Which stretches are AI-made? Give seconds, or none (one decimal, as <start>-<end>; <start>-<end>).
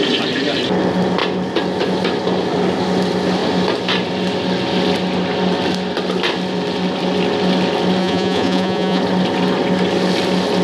8.0-9.0